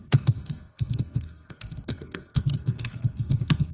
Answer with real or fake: fake